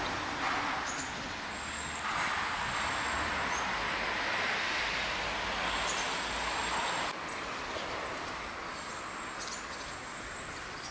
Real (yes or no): yes